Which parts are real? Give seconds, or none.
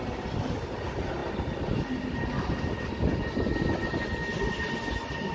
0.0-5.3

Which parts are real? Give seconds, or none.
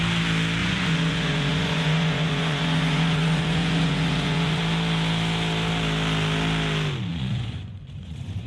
0.0-0.6; 4.6-7.1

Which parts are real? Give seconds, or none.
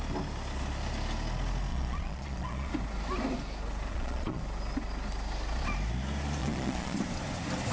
0.0-1.7; 2.7-3.9; 4.4-6.4; 7.0-7.7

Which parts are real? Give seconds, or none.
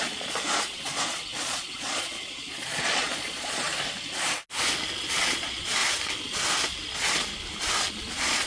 3.7-5.1; 5.8-7.9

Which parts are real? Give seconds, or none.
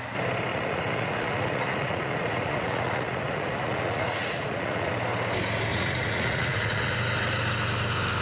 0.0-0.5; 4.9-5.7; 6.9-8.2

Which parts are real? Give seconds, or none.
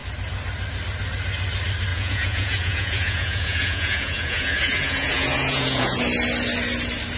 0.0-1.9; 6.0-7.2